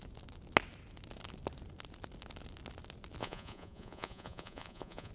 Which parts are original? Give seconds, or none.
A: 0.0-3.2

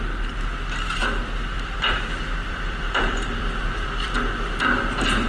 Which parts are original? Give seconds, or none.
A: 0.0-1.0; 4.2-5.3

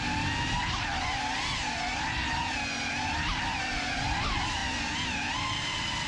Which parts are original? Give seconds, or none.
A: 0.0-6.1

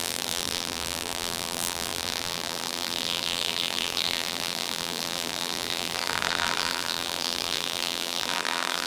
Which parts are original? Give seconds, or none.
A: none

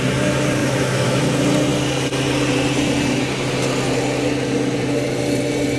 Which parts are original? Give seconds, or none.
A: 0.0-0.6; 1.2-5.8

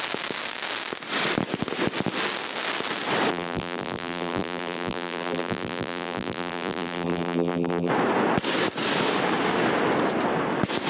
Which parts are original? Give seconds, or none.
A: 0.0-3.3; 7.9-10.9